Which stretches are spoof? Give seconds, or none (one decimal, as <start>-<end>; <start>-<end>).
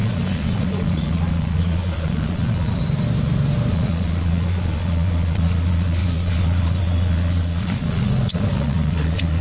0.0-2.8; 3.7-9.4